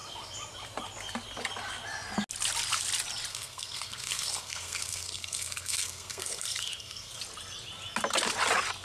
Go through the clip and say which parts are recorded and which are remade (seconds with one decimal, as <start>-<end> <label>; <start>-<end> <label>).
0.0-3.3 recorded; 3.3-7.2 remade; 7.2-8.8 recorded